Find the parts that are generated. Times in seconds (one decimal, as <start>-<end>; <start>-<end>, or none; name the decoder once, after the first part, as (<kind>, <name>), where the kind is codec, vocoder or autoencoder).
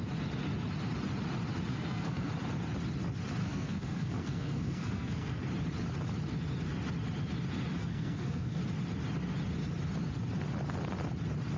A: 1.7-2.3 (codec, SNAC); 3.4-5.4; 7.8-8.6